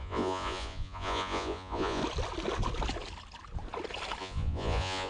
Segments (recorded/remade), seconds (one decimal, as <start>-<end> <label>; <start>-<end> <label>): 0.0-2.0 remade; 2.0-4.2 recorded; 4.2-5.1 remade